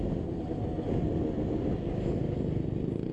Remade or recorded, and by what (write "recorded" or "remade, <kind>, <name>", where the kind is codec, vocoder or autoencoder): recorded